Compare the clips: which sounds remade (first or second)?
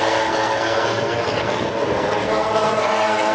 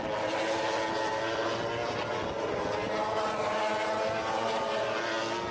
first